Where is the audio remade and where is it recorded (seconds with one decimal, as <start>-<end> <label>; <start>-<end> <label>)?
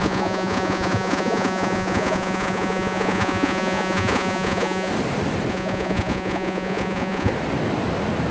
0.0-4.9 remade; 4.9-5.5 recorded; 5.5-7.3 remade; 7.3-8.3 recorded